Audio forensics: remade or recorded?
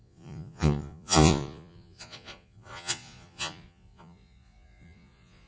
remade